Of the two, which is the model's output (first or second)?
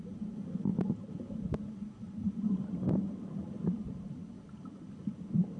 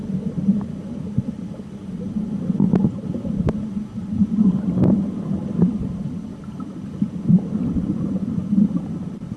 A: second